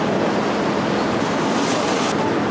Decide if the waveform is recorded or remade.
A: recorded